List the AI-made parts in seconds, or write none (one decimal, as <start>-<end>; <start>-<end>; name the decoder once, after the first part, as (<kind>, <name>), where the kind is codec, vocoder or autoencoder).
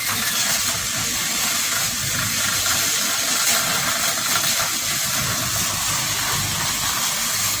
none